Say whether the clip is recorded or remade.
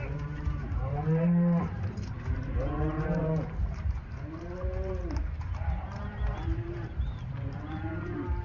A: remade